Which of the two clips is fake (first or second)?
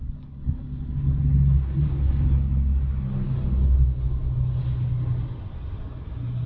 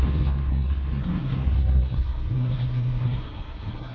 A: second